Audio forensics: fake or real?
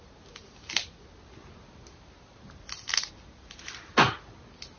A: real